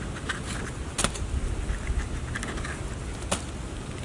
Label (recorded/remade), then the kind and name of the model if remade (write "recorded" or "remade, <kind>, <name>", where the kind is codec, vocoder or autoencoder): recorded